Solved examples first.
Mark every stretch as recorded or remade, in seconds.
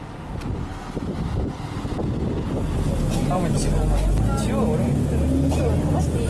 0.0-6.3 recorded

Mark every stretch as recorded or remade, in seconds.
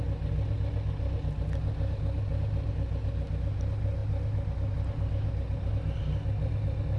0.0-7.0 recorded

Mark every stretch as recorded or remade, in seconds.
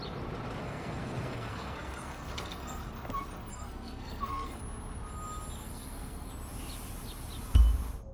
0.0-0.6 recorded; 0.6-2.9 remade; 2.9-3.5 recorded; 3.5-4.6 remade; 4.6-5.6 recorded; 5.6-6.3 remade; 6.3-8.1 recorded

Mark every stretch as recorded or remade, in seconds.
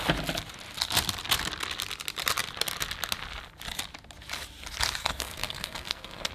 0.0-5.0 recorded; 5.0-6.3 remade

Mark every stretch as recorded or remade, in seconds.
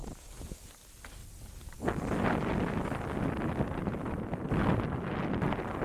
0.0-5.8 recorded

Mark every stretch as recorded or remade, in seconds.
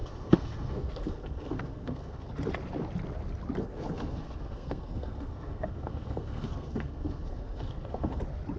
0.0-2.3 remade; 2.3-3.6 recorded; 3.6-8.2 remade; 8.2-8.6 recorded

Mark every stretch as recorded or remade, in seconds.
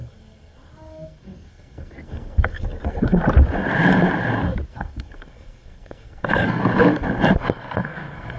0.0-3.2 remade; 3.2-4.7 recorded; 4.7-6.6 remade; 6.6-7.5 recorded; 7.5-8.4 remade